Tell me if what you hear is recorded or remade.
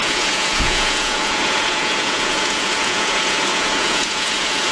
remade